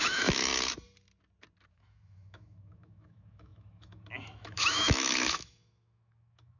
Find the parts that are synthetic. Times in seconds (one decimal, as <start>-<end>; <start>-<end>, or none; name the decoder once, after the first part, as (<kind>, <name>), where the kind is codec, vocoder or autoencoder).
0.0-0.5 (autoencoder, DAC-VAE); 1.7-6.6